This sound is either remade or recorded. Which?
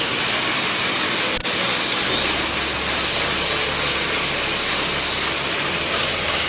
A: recorded